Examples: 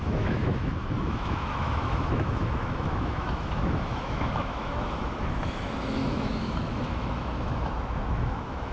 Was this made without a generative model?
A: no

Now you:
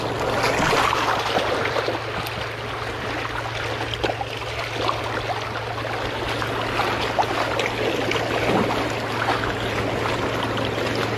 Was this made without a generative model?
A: yes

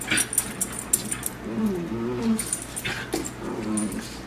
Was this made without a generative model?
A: yes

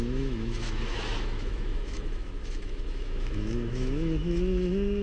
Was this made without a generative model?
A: no